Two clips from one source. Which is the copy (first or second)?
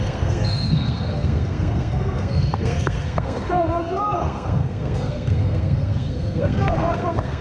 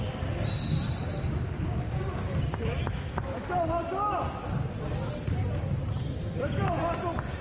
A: first